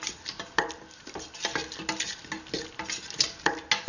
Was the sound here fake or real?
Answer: real